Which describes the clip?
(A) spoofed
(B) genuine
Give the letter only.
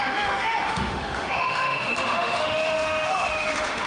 A